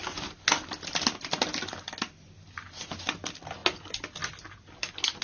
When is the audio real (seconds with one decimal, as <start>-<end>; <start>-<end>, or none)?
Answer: 0.0-5.2